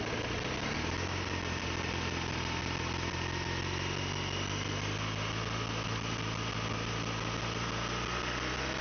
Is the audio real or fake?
real